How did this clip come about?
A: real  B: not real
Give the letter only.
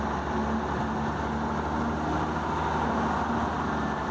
A